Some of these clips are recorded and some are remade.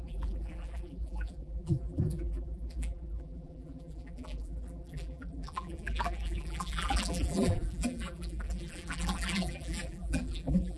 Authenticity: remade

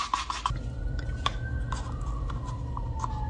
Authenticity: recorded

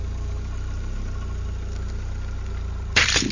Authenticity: remade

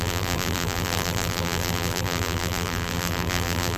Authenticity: remade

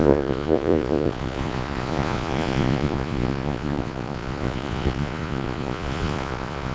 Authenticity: remade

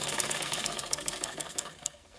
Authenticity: remade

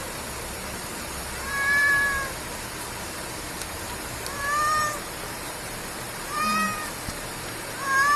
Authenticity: remade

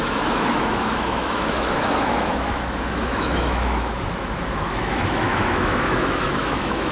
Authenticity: remade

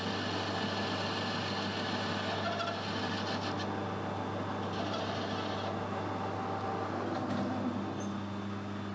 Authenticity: recorded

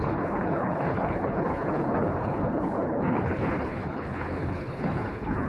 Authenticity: remade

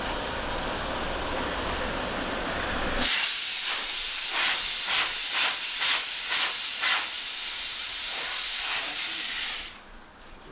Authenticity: remade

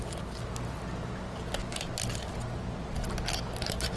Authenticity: recorded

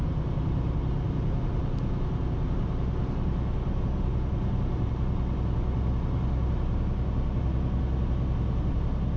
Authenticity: recorded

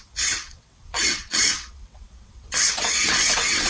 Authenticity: remade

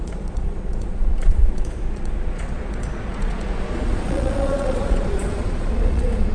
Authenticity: remade